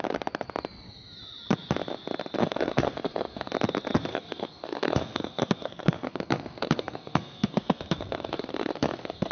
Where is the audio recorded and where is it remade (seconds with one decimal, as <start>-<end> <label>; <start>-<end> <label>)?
0.0-2.4 recorded; 2.4-3.5 remade; 3.5-4.1 recorded; 4.1-9.3 remade